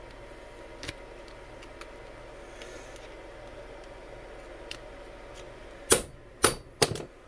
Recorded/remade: recorded